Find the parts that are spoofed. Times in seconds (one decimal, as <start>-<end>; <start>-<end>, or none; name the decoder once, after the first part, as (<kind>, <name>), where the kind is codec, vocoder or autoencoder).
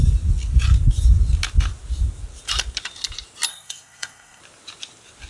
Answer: 3.5-4.4 (codec, SNAC)